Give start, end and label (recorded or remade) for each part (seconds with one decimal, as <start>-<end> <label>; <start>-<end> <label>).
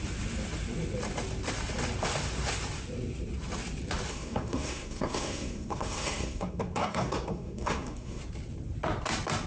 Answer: 0.0-4.1 recorded; 4.1-8.2 remade; 8.2-9.5 recorded